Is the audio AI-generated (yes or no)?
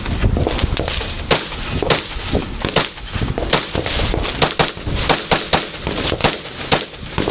no